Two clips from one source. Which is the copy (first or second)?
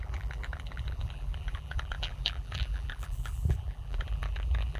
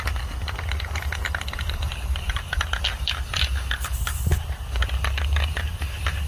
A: first